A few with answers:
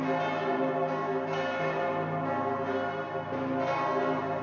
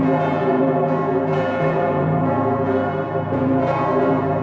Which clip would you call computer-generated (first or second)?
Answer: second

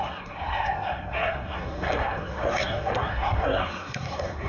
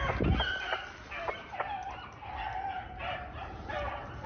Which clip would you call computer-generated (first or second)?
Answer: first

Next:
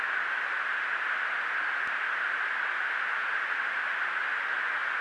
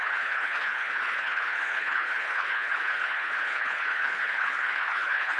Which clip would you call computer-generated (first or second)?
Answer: second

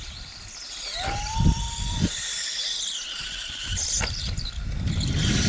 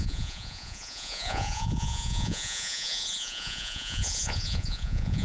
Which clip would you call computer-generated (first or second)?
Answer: second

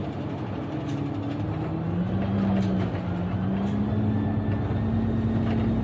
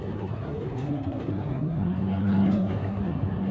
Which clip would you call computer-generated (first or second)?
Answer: second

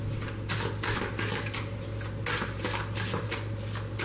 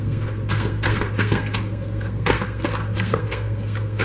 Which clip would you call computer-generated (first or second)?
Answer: second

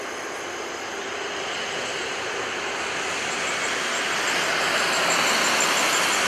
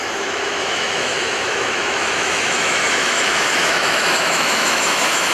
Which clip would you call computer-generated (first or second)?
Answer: second